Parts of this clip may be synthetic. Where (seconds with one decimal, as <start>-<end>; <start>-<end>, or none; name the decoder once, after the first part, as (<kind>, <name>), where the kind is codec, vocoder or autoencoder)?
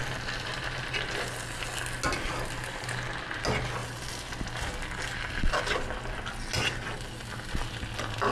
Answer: none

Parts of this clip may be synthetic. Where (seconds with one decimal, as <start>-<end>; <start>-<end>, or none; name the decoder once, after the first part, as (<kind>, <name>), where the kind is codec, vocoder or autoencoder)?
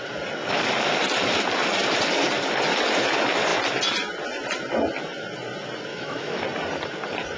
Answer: 5.9-6.4 (autoencoder, DAC-VAE)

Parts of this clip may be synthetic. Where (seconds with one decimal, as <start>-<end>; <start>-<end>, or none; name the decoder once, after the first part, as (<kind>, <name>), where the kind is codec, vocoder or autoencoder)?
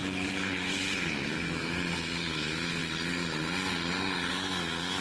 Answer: 0.0-2.8 (autoencoder, DAC-VAE); 4.3-5.0